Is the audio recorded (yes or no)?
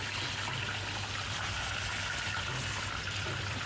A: yes